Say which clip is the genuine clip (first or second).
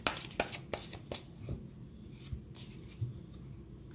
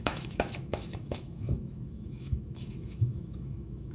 first